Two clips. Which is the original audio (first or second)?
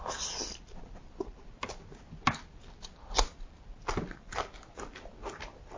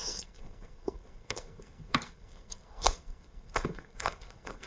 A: first